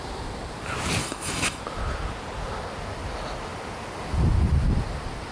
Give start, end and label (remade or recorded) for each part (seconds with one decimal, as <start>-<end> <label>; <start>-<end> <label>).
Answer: 0.0-1.0 recorded; 1.0-1.6 remade; 1.6-5.3 recorded